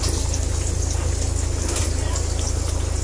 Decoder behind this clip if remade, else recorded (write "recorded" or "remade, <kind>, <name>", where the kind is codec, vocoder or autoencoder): recorded